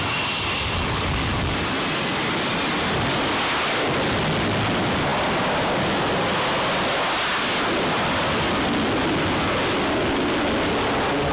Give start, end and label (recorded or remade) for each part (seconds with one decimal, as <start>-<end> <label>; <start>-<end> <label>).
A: 0.0-11.3 recorded